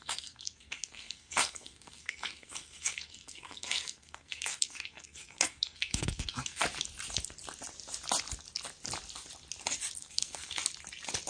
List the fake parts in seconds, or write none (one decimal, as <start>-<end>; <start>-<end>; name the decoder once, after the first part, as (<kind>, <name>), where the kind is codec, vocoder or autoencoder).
0.0-6.6 (codec, SNAC); 10.0-10.6